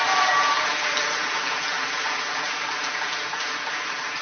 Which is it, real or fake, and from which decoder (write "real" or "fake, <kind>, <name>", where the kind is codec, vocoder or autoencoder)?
real